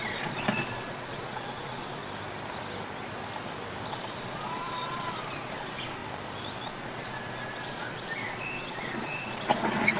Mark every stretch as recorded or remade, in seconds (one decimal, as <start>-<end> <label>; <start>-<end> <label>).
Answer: 0.0-2.0 remade; 2.0-3.9 recorded; 3.9-6.0 remade; 6.0-6.6 recorded; 6.6-10.0 remade